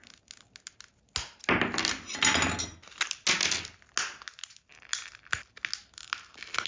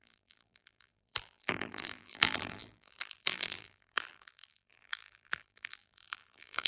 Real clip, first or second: first